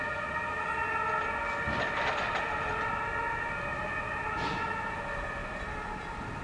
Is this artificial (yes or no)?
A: no